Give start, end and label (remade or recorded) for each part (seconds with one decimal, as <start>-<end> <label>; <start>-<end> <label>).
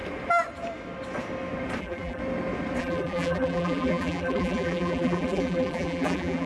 0.0-1.8 recorded; 1.8-2.2 remade; 2.2-2.8 recorded; 2.8-6.5 remade